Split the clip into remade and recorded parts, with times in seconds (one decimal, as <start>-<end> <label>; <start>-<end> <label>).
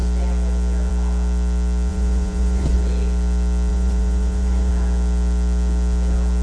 0.0-1.9 recorded; 1.9-2.8 remade; 2.8-3.7 recorded; 3.7-4.7 remade; 4.7-6.4 recorded